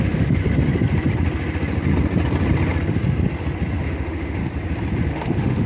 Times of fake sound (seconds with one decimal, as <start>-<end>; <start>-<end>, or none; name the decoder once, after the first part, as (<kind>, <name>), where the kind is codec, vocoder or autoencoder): 0.0-0.4 (autoencoder, DAC-VAE); 3.8-4.4; 5.1-5.7